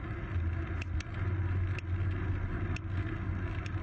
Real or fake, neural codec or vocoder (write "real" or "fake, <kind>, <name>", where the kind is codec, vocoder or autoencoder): real